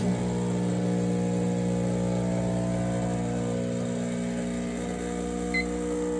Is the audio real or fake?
real